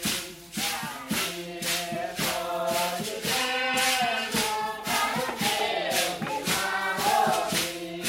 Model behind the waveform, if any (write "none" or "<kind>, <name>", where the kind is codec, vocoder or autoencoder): none